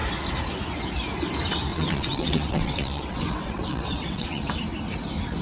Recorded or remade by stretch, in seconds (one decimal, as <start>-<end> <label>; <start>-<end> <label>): 0.0-1.7 recorded; 1.7-4.5 remade; 4.5-5.4 recorded